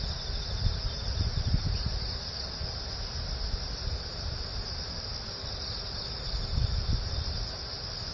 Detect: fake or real real